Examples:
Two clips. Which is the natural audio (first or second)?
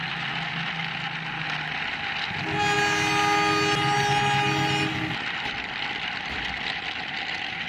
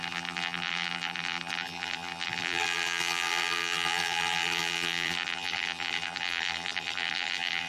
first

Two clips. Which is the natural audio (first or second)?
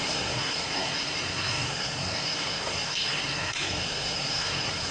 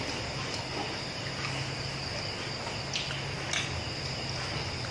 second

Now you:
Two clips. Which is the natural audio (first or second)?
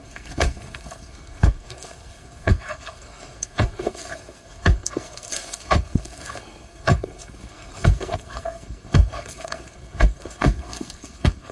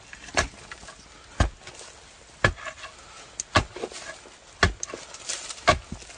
second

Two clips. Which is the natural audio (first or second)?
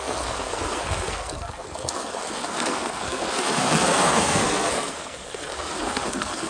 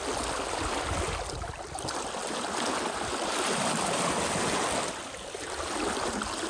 second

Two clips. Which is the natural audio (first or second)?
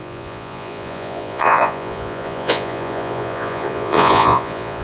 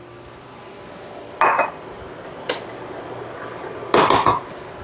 second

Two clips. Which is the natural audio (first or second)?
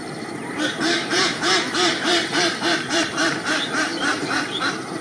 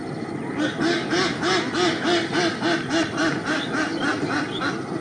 second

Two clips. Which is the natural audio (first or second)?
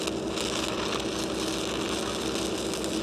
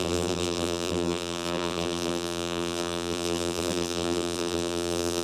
first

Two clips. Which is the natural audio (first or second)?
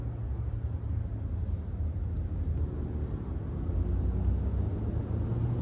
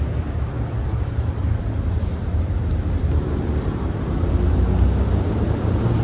first